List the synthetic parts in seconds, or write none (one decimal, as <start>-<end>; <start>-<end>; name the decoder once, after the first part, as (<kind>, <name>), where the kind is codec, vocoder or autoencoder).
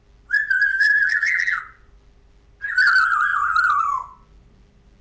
0.7-1.6 (vocoder, BigVGAN v2)